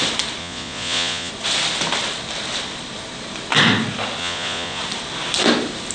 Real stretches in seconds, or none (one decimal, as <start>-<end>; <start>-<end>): 0.0-0.4; 1.3-4.2; 4.8-5.9